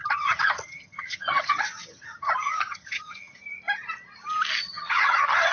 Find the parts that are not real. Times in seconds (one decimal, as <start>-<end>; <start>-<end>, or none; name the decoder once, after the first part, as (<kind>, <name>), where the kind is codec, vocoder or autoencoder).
0.0-3.4 (vocoder, HiFi-GAN); 4.6-5.5